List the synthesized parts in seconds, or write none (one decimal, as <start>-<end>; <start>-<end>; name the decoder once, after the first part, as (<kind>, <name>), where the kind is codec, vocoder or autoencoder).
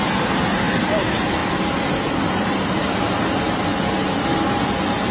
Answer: none